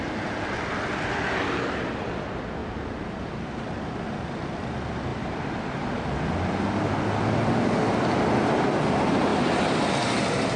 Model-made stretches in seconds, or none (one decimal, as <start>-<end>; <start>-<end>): 2.6-3.6; 5.1-6.2